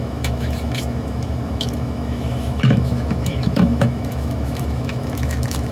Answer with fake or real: fake